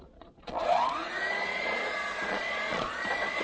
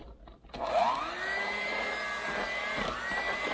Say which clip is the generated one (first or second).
first